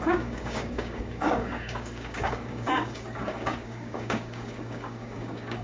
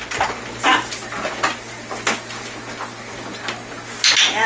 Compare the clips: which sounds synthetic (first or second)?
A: first